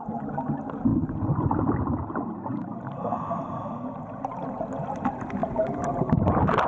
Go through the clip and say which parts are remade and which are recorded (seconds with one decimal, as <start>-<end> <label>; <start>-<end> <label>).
0.0-6.7 recorded